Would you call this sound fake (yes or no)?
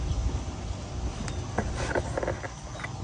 no